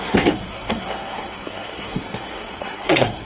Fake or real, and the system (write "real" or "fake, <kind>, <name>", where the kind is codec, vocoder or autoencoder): fake, codec, SNAC